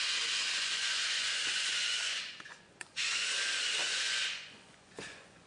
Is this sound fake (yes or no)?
yes